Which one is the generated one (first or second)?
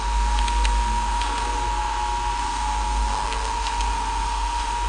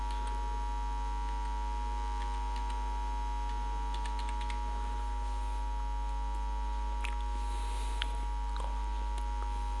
first